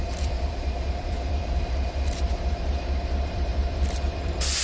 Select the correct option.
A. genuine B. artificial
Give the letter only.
B